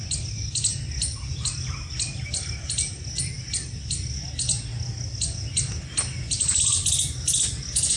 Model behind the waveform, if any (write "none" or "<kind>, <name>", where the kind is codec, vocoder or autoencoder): none